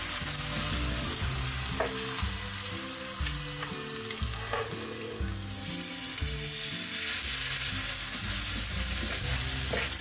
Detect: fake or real real